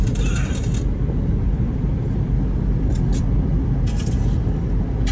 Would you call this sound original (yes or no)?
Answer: yes